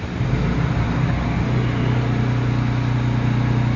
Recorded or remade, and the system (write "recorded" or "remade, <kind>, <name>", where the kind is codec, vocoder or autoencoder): recorded